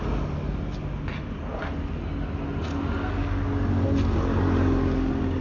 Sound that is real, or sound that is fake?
real